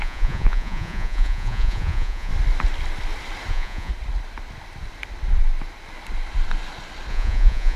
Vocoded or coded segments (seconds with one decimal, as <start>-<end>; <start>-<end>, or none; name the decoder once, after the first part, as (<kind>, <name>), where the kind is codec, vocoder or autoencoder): 0.0-2.3 (vocoder, Vocos); 3.5-3.9; 7.1-7.8